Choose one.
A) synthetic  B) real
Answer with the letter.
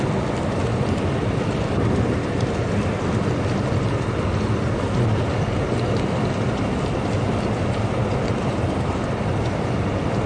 B